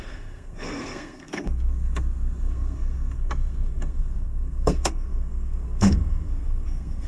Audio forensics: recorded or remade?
remade